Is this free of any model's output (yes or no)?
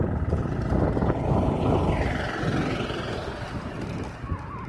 yes